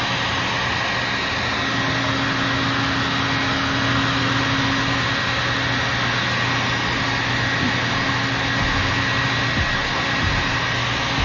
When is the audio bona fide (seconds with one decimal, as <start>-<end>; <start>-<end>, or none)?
0.0-11.2